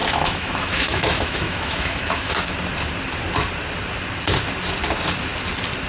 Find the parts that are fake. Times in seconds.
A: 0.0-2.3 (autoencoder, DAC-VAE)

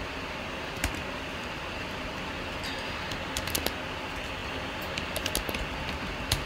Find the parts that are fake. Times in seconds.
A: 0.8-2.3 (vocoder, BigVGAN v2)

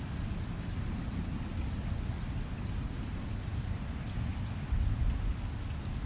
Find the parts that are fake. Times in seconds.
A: none

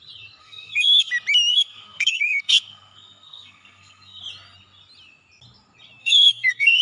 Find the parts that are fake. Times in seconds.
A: 0.4-1.1 (codec, SNAC); 1.5-4.2; 6.0-6.8